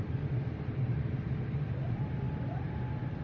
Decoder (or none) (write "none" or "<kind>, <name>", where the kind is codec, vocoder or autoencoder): none